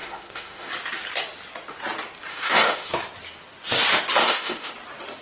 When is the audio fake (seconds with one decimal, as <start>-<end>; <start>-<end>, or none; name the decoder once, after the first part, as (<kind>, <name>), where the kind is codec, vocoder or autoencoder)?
0.0-0.7 (autoencoder, DAC-VAE); 2.3-2.9; 4.2-4.7